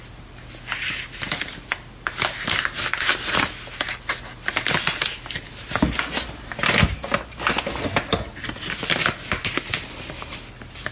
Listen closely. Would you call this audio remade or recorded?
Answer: recorded